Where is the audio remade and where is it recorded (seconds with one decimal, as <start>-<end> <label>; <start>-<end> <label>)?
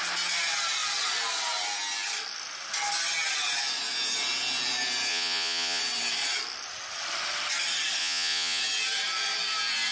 0.0-5.1 recorded; 5.1-5.8 remade; 5.8-8.0 recorded; 8.0-8.6 remade; 8.6-9.9 recorded